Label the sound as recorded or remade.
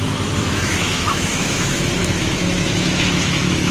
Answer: remade